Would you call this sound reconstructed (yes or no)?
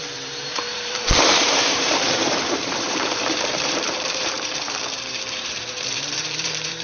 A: yes